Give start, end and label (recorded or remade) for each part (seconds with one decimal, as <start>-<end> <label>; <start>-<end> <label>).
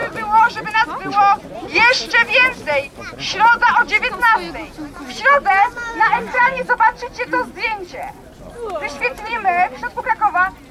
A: 0.0-10.7 recorded